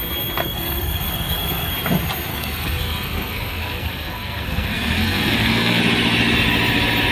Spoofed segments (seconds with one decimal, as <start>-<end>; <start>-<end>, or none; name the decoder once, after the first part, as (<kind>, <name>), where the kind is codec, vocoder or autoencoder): 0.4-1.7 (codec, SNAC); 2.3-5.8